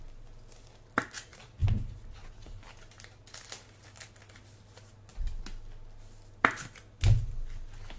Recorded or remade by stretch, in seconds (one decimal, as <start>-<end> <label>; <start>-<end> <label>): 0.0-8.0 recorded